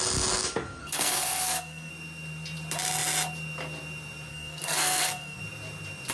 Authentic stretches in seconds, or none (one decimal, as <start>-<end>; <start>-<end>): 0.0-0.8; 1.9-4.3; 5.4-6.1